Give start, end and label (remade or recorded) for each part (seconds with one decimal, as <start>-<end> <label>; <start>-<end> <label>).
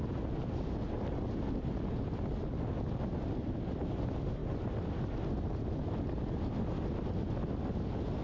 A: 0.0-8.2 recorded